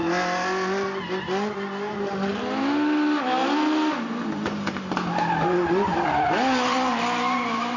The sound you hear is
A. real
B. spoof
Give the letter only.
A